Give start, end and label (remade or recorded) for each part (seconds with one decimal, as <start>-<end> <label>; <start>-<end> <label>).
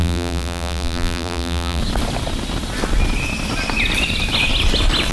0.0-1.8 remade; 1.8-5.1 recorded